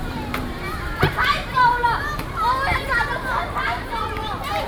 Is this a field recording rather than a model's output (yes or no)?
no